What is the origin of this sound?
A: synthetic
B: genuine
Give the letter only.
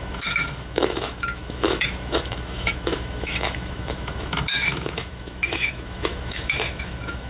A